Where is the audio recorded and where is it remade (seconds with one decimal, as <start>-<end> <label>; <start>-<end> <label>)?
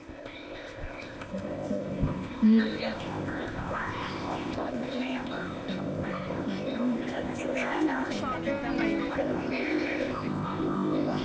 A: 0.0-8.2 remade; 8.2-9.1 recorded; 9.1-11.2 remade